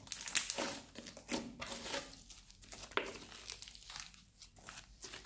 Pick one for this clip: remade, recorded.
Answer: recorded